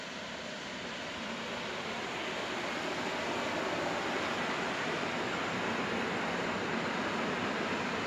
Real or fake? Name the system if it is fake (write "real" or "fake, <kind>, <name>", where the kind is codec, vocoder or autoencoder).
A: real